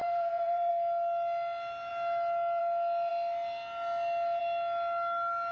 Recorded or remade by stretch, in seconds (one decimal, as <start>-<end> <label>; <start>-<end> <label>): 0.0-0.7 remade; 0.7-5.5 recorded